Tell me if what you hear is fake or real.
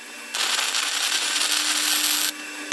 real